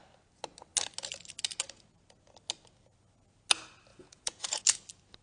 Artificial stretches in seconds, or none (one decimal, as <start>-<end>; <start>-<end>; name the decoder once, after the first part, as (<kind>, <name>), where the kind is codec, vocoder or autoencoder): 3.9-4.6 (vocoder, Vocos)